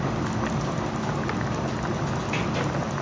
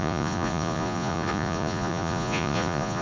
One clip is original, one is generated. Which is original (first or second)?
first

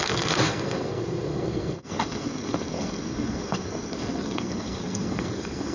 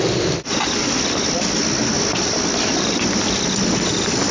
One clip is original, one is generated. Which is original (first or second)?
second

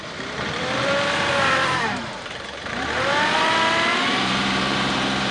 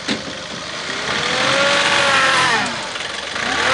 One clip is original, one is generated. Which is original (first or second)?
second